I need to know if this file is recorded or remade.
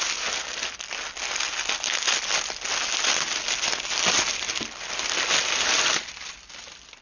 recorded